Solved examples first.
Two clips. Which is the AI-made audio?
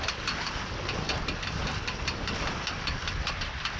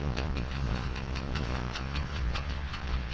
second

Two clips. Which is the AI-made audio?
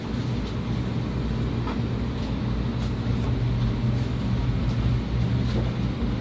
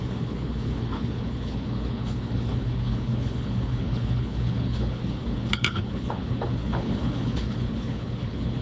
second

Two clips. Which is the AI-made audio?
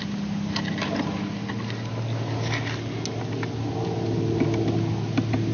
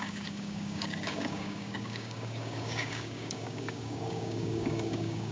second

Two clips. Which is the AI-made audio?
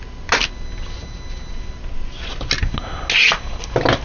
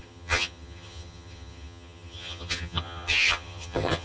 second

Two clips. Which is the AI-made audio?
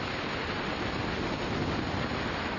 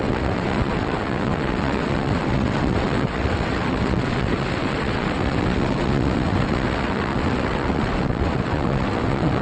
second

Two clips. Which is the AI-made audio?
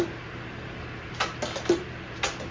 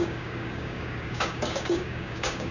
second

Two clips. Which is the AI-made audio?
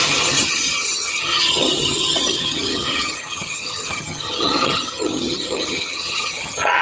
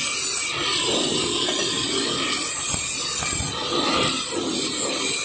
first